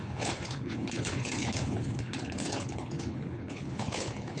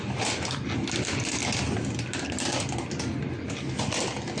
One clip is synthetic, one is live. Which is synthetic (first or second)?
first